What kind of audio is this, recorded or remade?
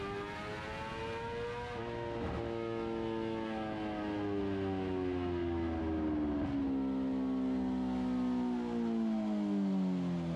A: recorded